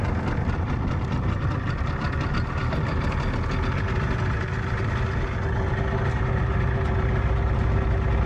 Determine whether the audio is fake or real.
real